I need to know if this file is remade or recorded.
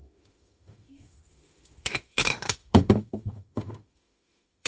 remade